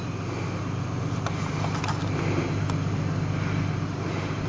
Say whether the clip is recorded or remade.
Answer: recorded